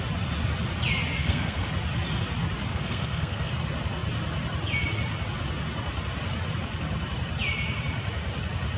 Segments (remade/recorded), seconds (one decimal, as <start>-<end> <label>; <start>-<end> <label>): 0.0-1.2 recorded; 1.2-1.7 remade; 1.7-2.7 recorded; 2.7-3.5 remade; 3.5-8.8 recorded